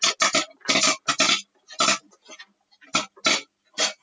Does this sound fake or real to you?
real